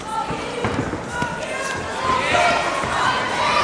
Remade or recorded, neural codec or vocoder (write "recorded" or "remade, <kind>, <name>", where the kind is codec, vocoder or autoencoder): recorded